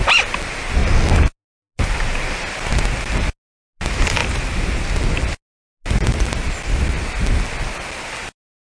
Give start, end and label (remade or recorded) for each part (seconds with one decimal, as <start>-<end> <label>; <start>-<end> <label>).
0.0-8.6 recorded